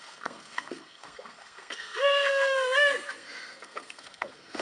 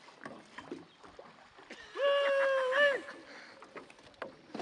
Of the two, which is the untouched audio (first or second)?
second